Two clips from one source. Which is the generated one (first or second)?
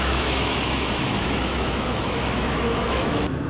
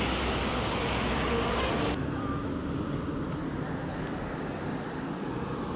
first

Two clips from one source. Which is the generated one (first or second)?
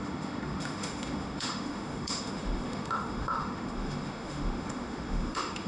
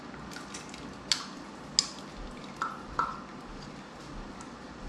first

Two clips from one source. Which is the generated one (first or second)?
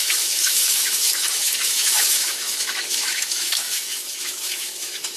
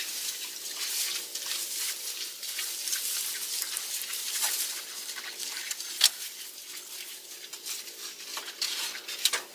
first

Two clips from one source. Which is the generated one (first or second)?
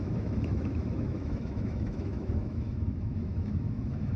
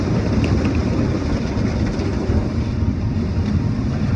first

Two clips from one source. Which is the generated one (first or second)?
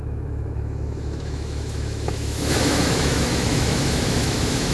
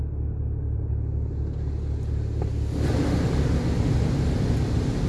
first